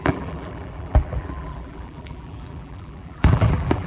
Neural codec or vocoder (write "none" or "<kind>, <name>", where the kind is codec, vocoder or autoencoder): vocoder, BigVGAN v2